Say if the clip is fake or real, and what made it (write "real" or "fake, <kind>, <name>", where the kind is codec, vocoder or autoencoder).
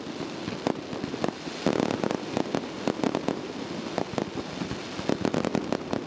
real